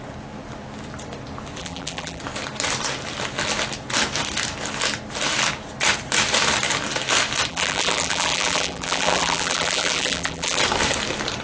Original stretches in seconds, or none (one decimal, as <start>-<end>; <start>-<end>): 0.0-1.6; 2.2-7.5; 10.6-11.4